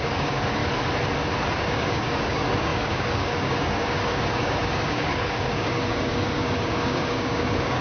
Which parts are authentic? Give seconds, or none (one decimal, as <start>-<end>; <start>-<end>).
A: 0.6-1.5